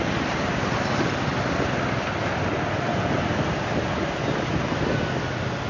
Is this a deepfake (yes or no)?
no